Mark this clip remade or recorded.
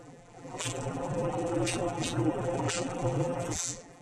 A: remade